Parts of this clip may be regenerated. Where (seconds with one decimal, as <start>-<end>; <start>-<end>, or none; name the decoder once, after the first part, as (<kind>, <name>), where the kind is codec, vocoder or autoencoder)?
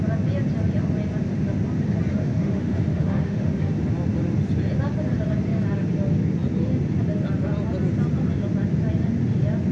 2.1-3.7 (autoencoder, DAC-VAE)